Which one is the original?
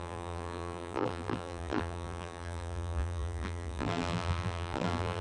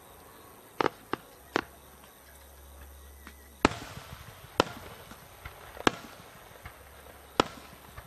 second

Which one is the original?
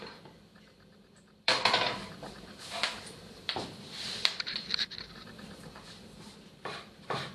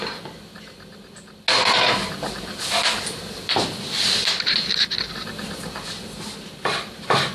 second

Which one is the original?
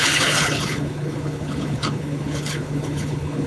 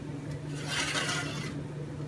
second